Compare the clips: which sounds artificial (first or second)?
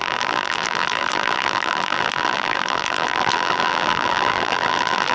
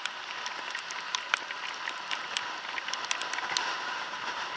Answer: first